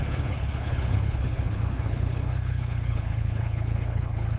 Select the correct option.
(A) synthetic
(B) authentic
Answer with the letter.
A